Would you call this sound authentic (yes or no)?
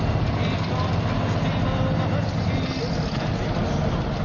yes